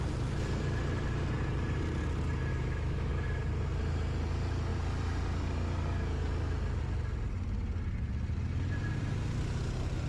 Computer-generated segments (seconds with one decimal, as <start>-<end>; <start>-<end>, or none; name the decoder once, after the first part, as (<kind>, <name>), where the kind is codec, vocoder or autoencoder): 2.5-3.1 (autoencoder, DAC-VAE)